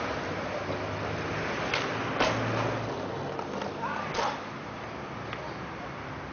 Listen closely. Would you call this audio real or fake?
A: real